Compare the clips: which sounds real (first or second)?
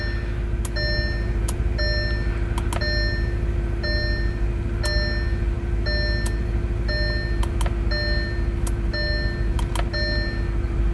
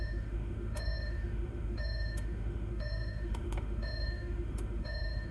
first